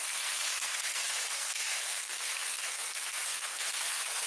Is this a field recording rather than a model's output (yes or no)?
no